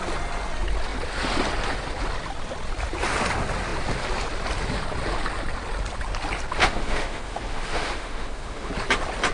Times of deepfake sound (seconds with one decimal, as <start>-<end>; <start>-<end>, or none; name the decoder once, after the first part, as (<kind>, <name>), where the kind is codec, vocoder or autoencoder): 6.6-8.7 (autoencoder, DAC-VAE)